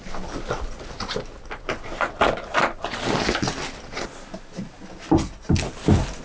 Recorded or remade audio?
recorded